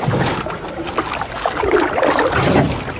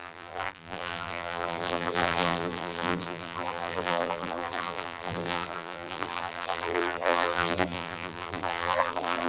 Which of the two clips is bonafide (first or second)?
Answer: first